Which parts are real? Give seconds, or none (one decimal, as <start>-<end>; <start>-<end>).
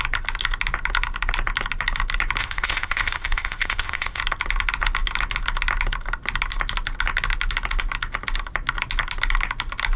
0.0-2.4; 4.2-10.0